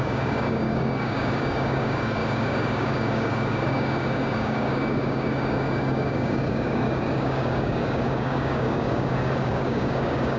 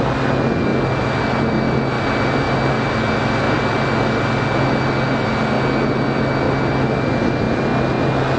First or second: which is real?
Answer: second